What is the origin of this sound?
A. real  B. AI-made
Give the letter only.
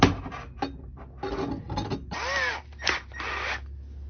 A